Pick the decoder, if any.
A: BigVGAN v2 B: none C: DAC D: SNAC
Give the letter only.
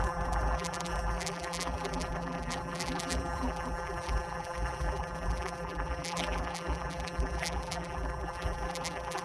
A